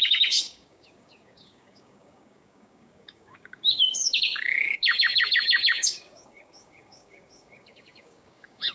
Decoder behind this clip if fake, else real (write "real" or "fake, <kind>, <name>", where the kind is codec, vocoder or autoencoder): fake, codec, DAC